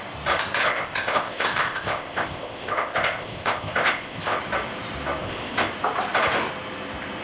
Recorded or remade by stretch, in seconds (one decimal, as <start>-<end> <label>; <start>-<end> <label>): 0.0-0.6 recorded; 0.6-4.4 remade; 4.4-5.2 recorded; 5.2-5.7 remade; 5.7-7.2 recorded